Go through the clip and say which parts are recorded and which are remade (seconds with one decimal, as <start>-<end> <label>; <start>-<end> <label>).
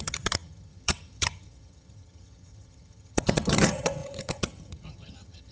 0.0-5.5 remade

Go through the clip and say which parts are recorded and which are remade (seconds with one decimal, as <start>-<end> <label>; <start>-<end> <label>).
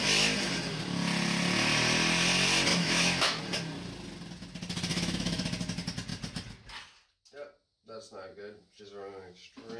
0.0-2.7 recorded; 2.7-3.4 remade; 3.4-4.9 recorded; 4.9-5.4 remade; 5.4-9.8 recorded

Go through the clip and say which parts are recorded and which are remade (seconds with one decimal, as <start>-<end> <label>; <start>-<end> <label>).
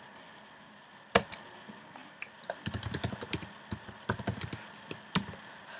0.0-5.8 recorded